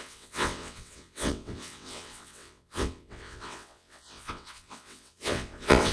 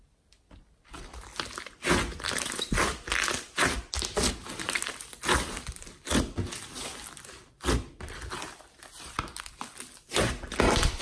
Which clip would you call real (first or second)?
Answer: second